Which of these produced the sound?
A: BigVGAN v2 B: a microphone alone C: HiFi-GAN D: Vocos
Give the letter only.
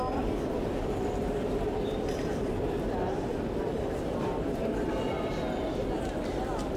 A